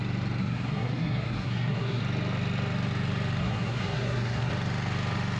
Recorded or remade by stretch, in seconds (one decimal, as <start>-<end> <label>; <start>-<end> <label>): 0.0-0.4 recorded; 0.4-2.0 remade; 2.0-3.4 recorded; 3.4-4.5 remade; 4.5-5.4 recorded